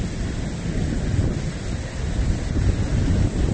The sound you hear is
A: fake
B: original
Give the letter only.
B